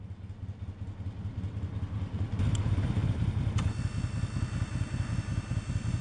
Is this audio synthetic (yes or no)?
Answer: no